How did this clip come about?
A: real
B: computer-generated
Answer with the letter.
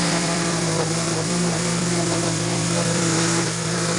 B